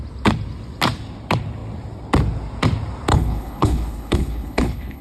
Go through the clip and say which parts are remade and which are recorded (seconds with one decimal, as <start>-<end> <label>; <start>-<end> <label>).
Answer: 0.0-3.1 recorded; 3.1-5.0 remade